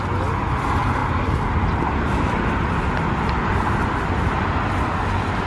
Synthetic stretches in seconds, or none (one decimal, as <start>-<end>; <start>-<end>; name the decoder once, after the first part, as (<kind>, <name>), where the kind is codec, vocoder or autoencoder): none